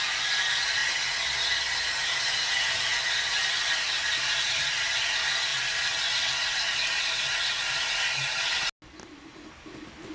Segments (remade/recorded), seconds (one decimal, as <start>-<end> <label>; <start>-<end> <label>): 0.0-0.8 remade; 0.8-2.5 recorded; 2.5-5.5 remade; 5.5-10.1 recorded